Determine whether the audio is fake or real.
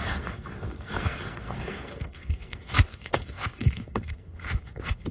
fake